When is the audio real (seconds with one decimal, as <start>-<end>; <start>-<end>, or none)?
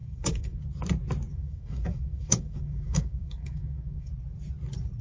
0.6-1.3; 4.1-5.0